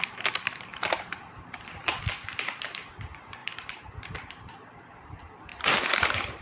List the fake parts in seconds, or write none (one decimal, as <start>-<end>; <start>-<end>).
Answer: 0.7-2.0; 3.4-5.1; 5.5-6.4